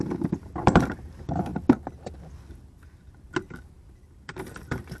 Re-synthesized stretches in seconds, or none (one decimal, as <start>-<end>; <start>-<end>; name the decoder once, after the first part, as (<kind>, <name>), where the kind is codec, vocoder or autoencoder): 0.0-1.5 (vocoder, BigVGAN v2); 3.6-5.0